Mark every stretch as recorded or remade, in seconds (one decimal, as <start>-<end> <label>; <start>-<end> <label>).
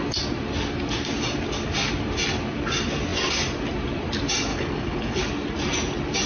0.0-4.5 recorded; 4.5-5.2 remade; 5.2-6.3 recorded